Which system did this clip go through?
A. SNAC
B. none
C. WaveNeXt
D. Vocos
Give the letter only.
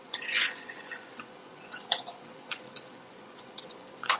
D